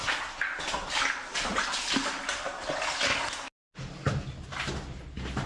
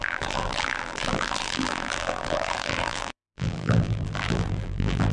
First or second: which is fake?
second